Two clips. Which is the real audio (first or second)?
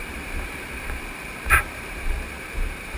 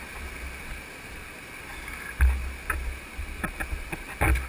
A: second